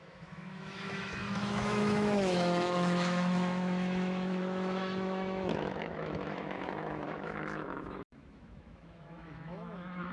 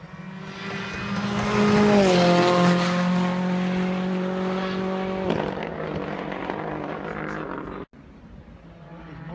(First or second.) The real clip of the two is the second